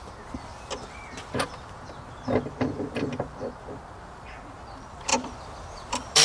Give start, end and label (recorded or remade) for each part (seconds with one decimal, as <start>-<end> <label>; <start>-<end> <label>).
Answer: 0.0-0.5 recorded; 0.5-3.5 remade; 3.5-5.1 recorded; 5.1-6.2 remade

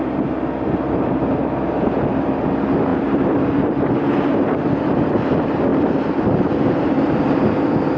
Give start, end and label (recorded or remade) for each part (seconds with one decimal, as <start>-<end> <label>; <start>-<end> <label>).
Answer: 0.0-1.4 recorded; 1.4-2.4 remade; 2.4-2.9 recorded; 2.9-3.8 remade; 3.8-8.0 recorded